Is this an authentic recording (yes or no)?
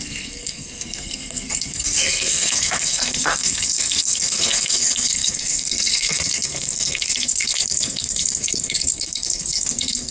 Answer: no